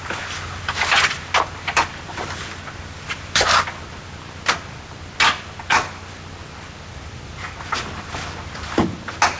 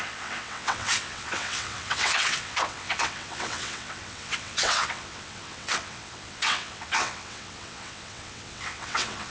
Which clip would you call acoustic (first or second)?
first